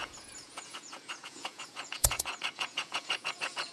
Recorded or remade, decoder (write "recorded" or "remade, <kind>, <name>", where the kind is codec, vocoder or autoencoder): remade, vocoder, Vocos